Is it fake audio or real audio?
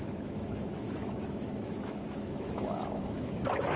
fake